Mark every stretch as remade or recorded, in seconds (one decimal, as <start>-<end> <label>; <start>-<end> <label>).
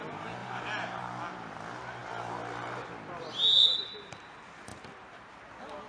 0.0-0.4 recorded; 0.4-1.0 remade; 1.0-3.7 recorded; 3.7-4.3 remade; 4.3-4.7 recorded; 4.7-5.3 remade; 5.3-5.9 recorded